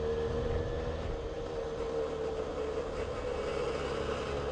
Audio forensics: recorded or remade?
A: recorded